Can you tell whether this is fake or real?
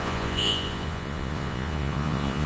fake